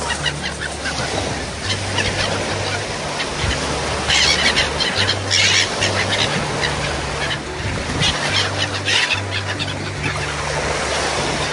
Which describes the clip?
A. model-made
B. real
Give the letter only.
B